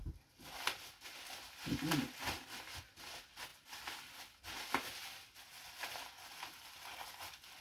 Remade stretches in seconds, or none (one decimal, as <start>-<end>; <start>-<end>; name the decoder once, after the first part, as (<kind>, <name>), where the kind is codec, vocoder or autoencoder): none